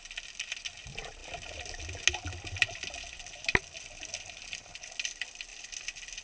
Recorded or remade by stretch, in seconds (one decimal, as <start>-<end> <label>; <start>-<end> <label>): 0.0-6.2 recorded

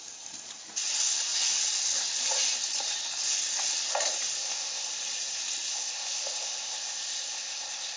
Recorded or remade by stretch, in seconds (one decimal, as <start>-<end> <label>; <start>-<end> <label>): 0.0-4.4 recorded; 4.4-4.9 remade; 4.9-5.7 recorded; 5.7-8.0 remade

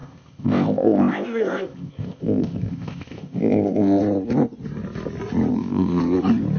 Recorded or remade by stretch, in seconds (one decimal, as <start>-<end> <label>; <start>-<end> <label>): 0.0-4.0 remade; 4.0-5.5 recorded; 5.5-6.0 remade; 6.0-6.6 recorded

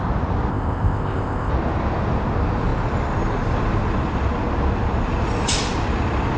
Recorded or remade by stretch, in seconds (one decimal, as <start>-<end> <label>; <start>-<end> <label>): 0.0-0.5 recorded; 0.5-1.5 remade; 1.5-6.4 recorded